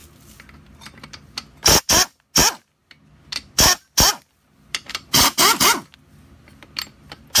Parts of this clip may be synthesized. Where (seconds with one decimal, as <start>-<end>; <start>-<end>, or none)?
none